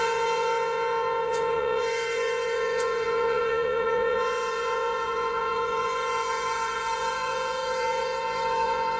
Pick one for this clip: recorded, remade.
remade